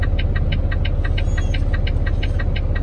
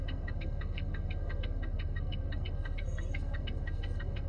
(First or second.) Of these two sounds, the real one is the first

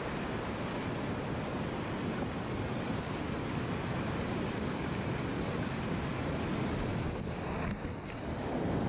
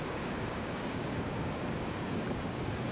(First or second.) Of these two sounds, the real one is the first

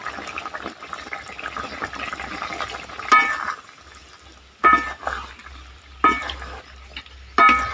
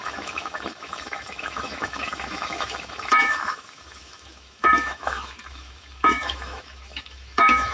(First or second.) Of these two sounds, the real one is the first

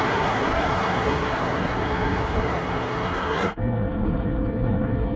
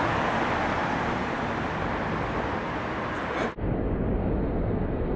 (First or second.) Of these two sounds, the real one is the second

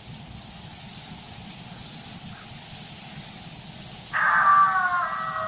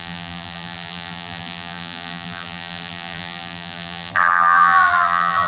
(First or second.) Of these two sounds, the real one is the first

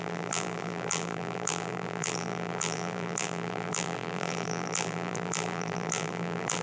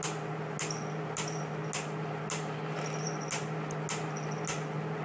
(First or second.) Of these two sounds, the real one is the second